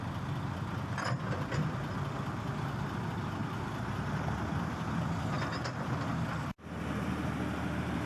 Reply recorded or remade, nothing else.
recorded